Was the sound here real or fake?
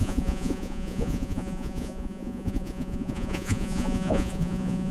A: fake